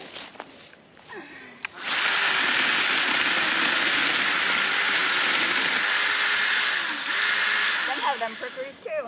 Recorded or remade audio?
recorded